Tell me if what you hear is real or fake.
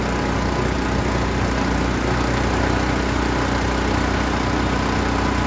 real